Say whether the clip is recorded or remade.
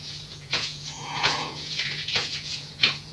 remade